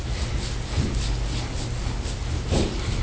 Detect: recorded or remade recorded